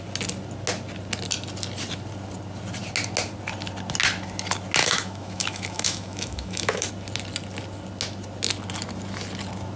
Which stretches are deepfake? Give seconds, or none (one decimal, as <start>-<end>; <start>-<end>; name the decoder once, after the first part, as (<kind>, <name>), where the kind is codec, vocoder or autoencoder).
4.8-6.9 (autoencoder, DAC-VAE)